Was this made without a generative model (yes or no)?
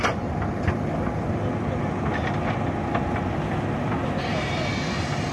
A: yes